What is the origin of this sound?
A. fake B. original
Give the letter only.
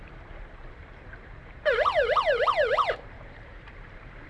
A